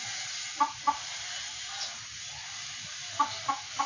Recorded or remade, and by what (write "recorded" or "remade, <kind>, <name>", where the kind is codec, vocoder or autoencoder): recorded